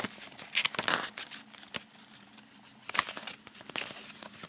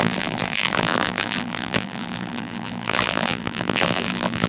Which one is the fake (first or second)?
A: second